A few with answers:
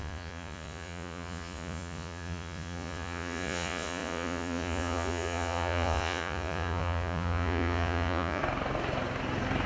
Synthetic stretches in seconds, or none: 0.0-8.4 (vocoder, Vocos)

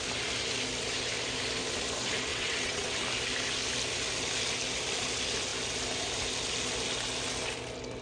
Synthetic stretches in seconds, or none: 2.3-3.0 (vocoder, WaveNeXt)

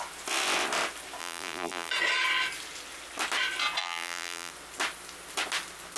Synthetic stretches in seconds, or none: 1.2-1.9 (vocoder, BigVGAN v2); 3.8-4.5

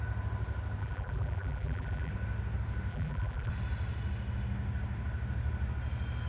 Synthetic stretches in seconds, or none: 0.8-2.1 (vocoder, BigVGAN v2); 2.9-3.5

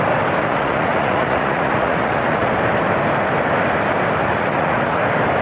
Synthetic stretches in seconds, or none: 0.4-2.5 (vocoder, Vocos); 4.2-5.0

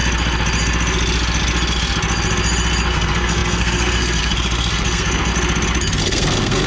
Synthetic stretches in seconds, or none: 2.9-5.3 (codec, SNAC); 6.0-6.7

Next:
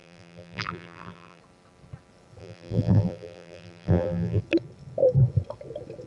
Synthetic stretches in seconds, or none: 0.0-1.4 (vocoder, BigVGAN v2); 2.4-4.4

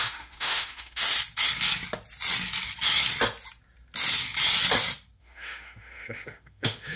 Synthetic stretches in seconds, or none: 0.0-1.0 (autoencoder, DAC-VAE); 5.2-7.0